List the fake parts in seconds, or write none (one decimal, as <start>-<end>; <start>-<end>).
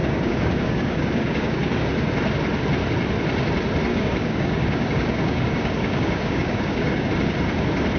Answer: 0.0-1.9; 3.9-7.1